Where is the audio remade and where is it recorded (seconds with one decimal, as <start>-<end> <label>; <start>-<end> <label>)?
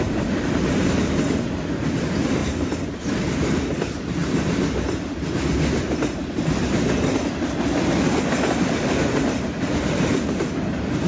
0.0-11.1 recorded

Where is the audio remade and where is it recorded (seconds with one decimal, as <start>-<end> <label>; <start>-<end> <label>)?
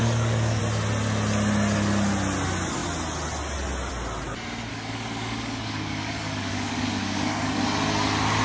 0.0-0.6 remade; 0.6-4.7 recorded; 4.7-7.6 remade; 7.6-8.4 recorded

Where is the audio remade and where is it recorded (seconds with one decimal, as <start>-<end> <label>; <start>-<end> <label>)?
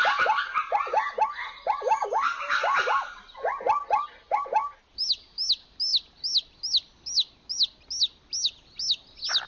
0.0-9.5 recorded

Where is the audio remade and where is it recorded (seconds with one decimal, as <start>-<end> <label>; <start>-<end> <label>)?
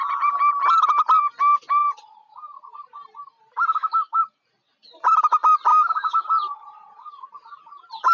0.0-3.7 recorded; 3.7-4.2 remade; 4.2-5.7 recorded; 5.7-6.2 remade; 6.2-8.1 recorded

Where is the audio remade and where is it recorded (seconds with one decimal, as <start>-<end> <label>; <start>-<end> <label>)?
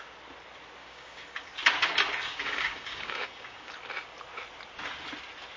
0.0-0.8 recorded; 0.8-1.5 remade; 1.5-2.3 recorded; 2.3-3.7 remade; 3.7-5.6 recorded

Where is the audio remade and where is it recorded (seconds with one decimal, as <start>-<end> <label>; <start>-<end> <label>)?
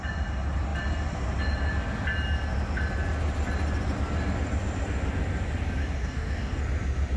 0.0-5.8 recorded; 5.8-6.6 remade; 6.6-7.2 recorded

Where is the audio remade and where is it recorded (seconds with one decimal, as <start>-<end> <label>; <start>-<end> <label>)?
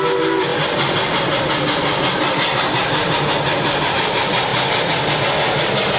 0.0-6.0 recorded